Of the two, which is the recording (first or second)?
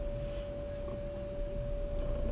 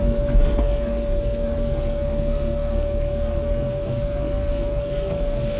first